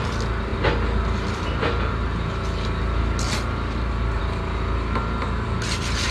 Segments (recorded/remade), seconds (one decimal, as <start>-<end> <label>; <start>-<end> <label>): 0.0-6.1 recorded